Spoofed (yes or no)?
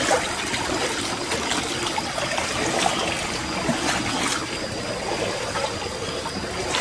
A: no